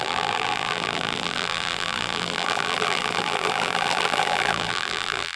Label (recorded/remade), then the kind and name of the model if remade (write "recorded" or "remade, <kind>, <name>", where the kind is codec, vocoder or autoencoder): remade, vocoder, BigVGAN v2